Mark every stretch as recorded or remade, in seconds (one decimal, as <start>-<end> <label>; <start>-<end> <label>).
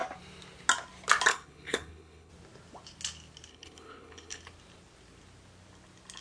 0.0-1.3 recorded; 1.3-2.3 remade; 2.3-3.5 recorded; 3.5-4.4 remade; 4.4-6.2 recorded